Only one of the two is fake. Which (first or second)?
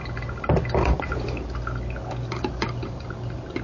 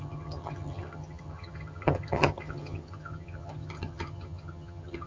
second